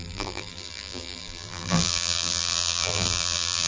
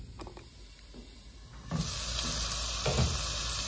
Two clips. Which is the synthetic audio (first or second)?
first